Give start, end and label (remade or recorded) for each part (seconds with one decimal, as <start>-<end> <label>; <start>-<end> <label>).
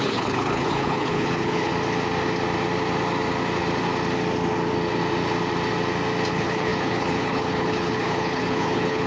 0.0-1.7 remade; 1.7-6.3 recorded; 6.3-9.1 remade